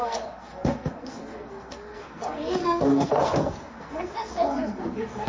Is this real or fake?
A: fake